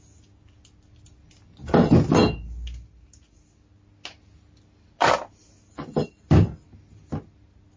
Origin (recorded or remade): recorded